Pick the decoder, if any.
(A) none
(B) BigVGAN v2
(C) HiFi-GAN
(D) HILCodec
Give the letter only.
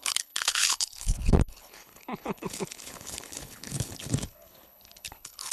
D